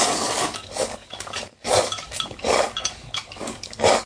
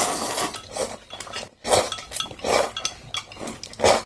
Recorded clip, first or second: second